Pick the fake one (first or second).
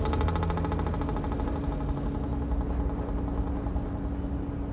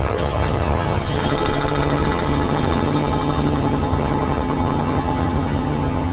second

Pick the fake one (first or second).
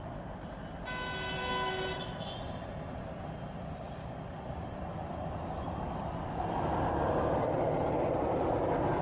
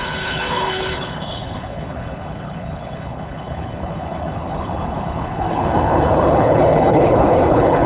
second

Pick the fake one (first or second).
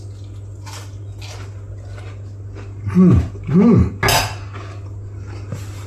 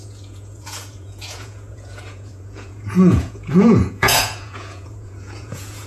second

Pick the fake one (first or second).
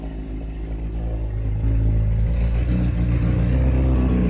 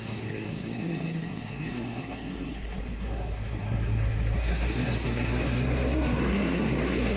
second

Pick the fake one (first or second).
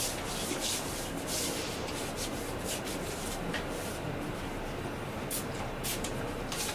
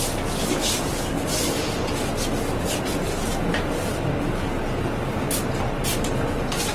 first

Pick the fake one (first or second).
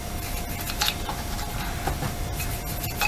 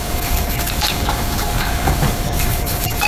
second